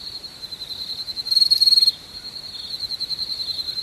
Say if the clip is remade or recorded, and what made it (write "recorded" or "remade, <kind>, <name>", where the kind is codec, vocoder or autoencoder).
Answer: recorded